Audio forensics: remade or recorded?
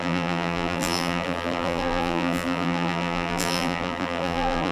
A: remade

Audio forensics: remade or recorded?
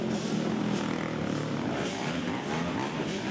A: recorded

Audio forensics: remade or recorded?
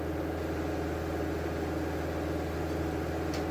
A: recorded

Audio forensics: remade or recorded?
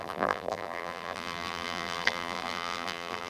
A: remade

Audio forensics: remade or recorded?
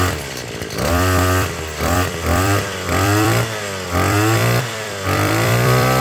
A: remade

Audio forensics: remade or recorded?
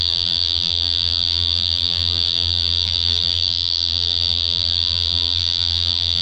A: remade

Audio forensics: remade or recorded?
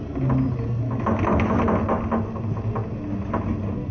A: recorded